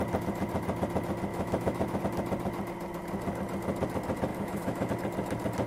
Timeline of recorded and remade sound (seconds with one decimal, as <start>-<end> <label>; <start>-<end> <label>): 0.0-1.3 recorded; 1.3-2.0 remade; 2.0-4.3 recorded; 4.3-4.9 remade; 4.9-5.7 recorded